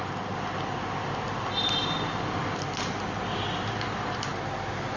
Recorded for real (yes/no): yes